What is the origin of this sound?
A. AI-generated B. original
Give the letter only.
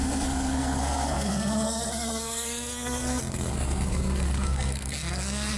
A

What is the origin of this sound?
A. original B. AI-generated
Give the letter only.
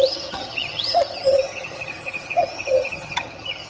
B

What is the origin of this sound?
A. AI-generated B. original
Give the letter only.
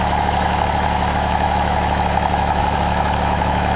A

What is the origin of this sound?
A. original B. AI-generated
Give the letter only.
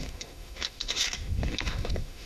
B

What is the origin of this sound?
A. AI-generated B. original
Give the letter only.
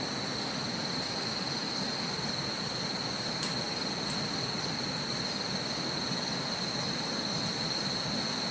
B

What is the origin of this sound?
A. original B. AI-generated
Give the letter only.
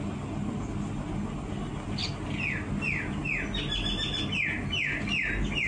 A